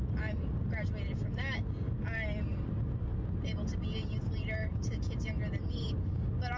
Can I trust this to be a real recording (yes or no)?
yes